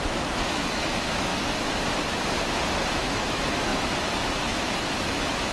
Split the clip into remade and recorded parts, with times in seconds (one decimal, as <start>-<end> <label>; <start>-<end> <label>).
0.0-1.3 remade; 1.3-2.9 recorded; 2.9-5.5 remade